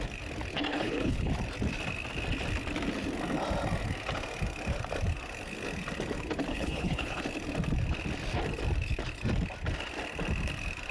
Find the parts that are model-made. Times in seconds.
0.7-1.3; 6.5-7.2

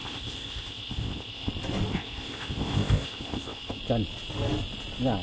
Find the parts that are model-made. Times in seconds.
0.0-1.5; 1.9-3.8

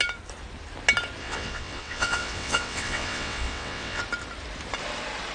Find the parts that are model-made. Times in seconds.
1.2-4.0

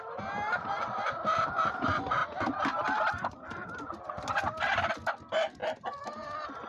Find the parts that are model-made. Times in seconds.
none

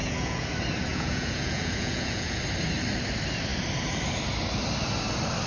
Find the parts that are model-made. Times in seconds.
0.0-0.5; 0.9-2.4

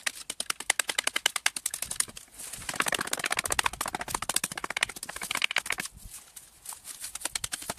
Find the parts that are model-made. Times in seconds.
4.2-5.1

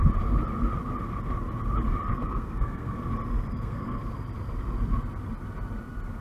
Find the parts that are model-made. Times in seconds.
2.1-3.0; 3.5-4.0

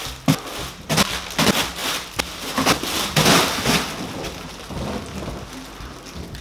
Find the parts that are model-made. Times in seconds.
none